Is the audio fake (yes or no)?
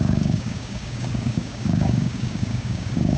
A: yes